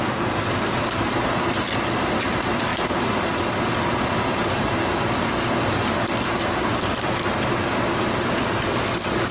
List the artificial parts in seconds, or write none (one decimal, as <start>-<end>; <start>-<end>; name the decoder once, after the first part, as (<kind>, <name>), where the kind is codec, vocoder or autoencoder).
none